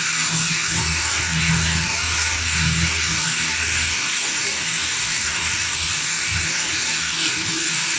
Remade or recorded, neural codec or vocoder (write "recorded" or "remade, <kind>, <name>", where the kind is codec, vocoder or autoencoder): remade, codec, DAC